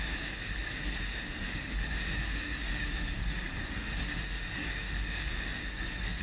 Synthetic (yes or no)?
yes